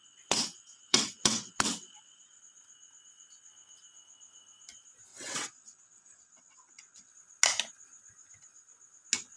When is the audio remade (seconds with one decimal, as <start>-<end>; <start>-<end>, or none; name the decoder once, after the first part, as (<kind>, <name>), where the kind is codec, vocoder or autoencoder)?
0.0-2.4 (vocoder, WaveNeXt); 5.1-7.1